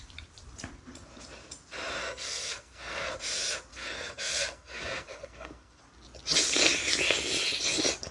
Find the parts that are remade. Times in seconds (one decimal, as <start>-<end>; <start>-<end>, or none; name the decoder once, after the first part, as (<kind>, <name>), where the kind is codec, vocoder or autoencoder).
2.0-3.1 (codec, SNAC); 3.7-5.8